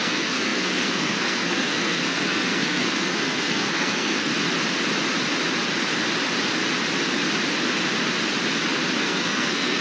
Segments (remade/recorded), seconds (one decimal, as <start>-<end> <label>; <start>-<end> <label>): 0.0-4.3 remade; 4.3-9.0 recorded; 9.0-9.8 remade